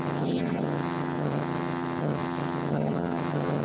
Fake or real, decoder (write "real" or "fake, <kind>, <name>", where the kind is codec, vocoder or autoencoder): fake, vocoder, HiFi-GAN